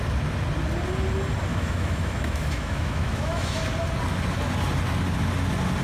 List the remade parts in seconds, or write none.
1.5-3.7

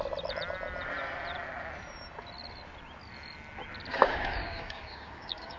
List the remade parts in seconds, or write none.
3.9-5.6

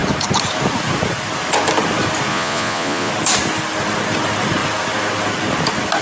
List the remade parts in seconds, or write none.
2.3-3.1

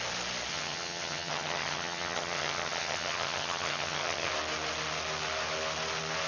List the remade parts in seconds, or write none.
0.5-4.3

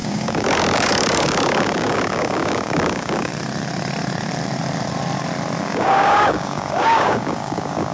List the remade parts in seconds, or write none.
0.0-3.3; 5.6-7.9